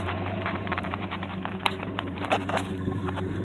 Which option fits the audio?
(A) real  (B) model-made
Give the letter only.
B